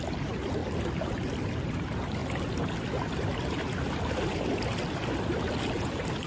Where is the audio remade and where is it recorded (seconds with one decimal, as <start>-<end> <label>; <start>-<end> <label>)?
0.0-0.6 remade; 0.6-1.6 recorded; 1.6-2.2 remade; 2.2-5.8 recorded; 5.8-6.3 remade